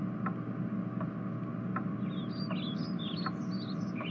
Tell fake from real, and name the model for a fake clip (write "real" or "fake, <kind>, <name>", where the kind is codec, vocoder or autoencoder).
real